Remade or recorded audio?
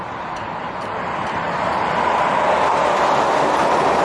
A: remade